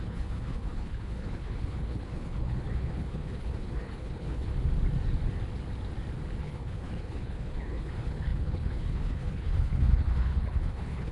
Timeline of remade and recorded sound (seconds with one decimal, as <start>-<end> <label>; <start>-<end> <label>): 0.0-4.5 remade; 4.5-6.4 recorded; 6.4-11.1 remade